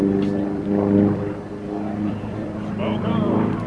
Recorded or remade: remade